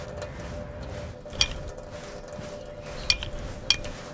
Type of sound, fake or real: real